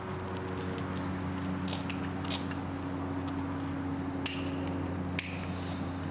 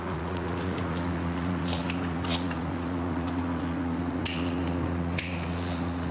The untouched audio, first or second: first